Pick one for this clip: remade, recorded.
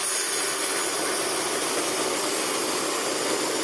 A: recorded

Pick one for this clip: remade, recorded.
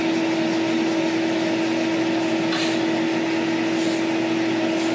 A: recorded